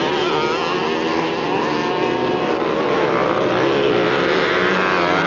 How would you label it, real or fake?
real